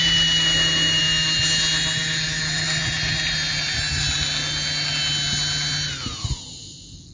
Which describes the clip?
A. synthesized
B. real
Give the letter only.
B